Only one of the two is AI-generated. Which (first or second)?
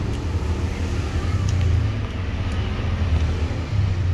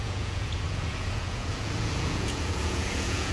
second